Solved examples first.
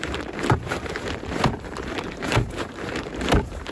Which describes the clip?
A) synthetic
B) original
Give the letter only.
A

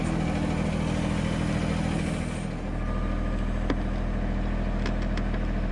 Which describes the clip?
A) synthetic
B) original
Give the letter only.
B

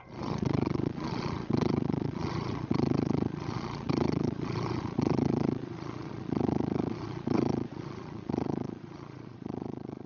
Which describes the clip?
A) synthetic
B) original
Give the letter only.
A